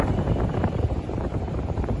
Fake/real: fake